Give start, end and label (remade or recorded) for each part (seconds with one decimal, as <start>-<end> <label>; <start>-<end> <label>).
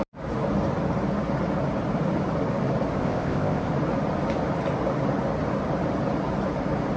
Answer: 0.0-3.0 recorded; 3.0-3.7 remade; 3.7-7.0 recorded